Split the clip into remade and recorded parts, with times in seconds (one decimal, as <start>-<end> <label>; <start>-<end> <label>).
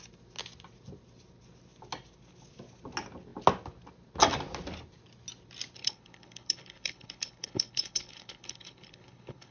0.0-5.8 recorded; 5.8-9.5 remade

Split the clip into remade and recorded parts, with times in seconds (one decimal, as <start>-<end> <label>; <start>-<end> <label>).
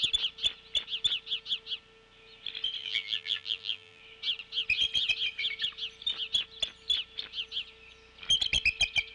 0.0-2.8 recorded; 2.8-4.0 remade; 4.0-9.1 recorded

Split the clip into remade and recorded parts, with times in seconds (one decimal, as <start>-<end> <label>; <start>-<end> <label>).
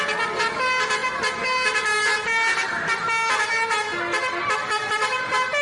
0.0-5.6 recorded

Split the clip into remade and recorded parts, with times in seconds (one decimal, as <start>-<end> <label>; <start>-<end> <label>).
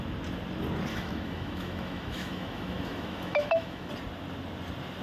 0.0-0.9 recorded; 0.9-3.9 remade; 3.9-5.0 recorded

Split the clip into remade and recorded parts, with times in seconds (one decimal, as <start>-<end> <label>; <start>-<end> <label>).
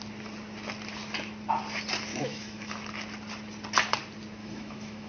0.0-2.1 recorded; 2.1-2.7 remade; 2.7-4.4 recorded; 4.4-5.1 remade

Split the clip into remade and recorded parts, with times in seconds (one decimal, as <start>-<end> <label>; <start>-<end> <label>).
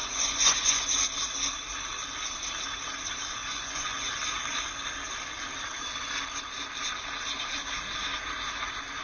0.0-0.8 remade; 0.8-3.4 recorded; 3.4-4.1 remade; 4.1-9.0 recorded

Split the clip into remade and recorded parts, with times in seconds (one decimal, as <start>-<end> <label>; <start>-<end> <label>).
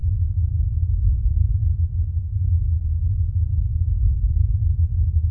0.0-5.3 recorded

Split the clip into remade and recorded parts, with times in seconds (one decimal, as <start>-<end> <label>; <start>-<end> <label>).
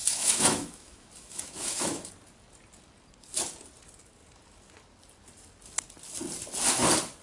0.0-2.1 remade; 2.1-7.2 recorded